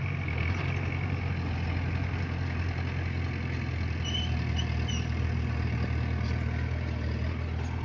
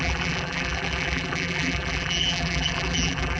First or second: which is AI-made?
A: second